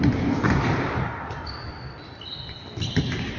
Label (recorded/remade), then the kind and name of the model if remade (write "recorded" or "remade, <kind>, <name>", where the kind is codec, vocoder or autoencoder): recorded